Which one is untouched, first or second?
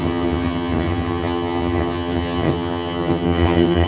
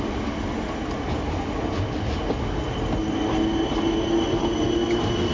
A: second